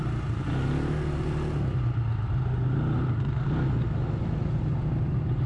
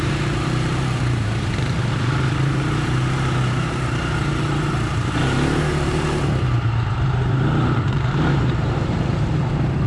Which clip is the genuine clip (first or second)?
first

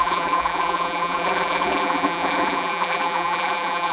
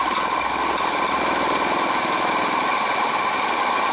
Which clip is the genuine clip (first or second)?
second